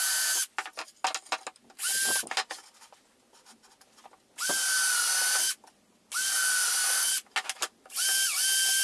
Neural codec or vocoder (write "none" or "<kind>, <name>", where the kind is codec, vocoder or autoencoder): none